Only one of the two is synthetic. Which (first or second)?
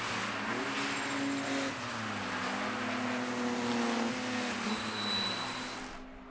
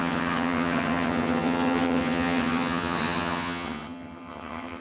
second